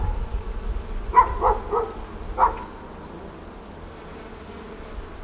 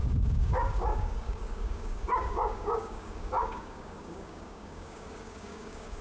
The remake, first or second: second